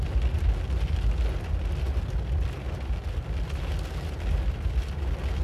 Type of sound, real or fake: real